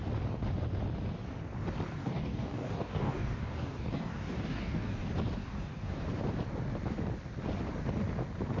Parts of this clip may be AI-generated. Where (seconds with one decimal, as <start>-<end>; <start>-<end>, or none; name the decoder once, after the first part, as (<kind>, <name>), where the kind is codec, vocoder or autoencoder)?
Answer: 2.0-5.0 (codec, DAC); 5.4-6.0